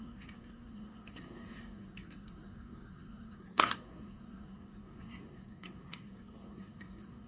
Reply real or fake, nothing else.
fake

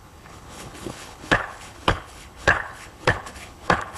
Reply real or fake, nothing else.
fake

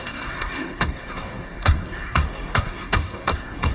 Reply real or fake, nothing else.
fake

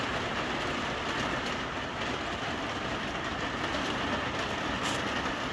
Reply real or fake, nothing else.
real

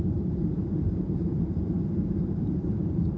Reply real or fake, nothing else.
fake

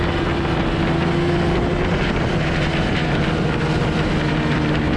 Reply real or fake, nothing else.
real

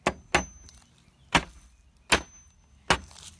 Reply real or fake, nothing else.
real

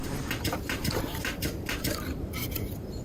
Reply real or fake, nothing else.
fake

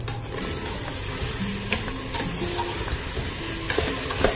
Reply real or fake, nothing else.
real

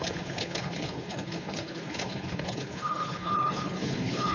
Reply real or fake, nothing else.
fake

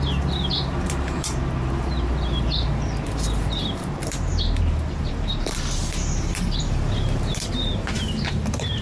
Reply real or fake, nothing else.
fake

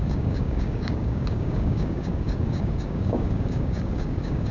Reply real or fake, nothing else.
fake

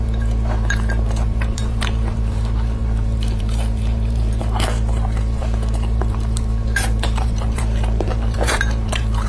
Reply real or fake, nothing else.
fake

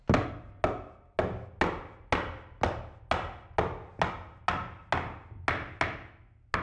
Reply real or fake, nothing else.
real